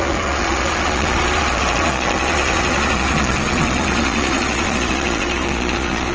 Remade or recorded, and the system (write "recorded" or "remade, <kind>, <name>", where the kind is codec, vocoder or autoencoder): remade, vocoder, Vocos